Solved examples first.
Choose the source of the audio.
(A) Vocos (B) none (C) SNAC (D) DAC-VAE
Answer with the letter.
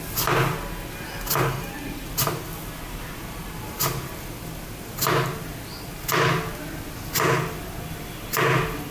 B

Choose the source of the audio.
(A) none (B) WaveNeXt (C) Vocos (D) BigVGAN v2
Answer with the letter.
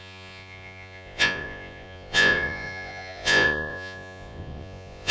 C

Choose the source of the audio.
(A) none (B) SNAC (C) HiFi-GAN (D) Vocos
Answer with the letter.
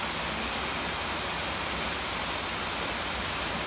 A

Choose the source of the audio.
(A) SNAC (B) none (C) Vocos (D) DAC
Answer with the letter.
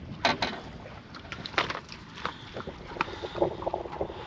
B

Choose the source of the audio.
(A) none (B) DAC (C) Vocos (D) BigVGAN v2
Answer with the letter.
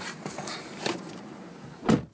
A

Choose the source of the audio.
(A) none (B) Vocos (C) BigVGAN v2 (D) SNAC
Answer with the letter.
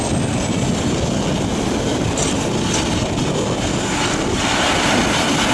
A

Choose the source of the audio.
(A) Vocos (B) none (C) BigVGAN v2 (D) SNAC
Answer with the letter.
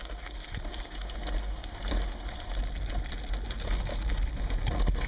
B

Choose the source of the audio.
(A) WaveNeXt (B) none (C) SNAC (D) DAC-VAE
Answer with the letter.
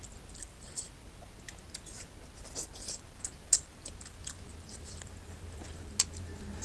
B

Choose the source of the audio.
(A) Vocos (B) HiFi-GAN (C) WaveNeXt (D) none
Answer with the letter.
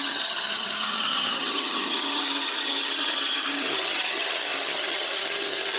B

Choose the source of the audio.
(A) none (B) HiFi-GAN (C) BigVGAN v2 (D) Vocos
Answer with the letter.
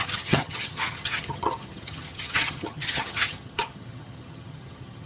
B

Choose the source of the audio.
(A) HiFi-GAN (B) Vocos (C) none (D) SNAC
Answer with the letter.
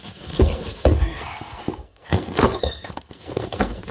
D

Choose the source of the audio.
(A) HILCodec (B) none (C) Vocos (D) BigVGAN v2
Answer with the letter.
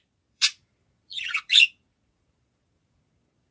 C